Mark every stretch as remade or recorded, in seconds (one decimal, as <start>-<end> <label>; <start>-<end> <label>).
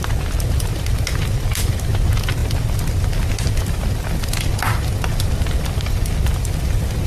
0.0-7.1 recorded